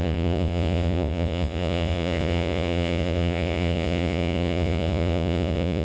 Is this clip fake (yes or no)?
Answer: yes